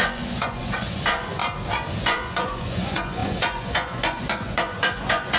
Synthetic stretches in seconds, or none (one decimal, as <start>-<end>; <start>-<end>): 0.0-1.4; 2.0-5.4

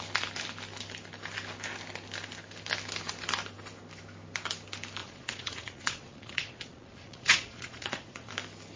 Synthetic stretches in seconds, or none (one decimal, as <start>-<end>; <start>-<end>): 5.0-8.3

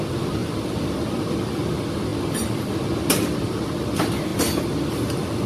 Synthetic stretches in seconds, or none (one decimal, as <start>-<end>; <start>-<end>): none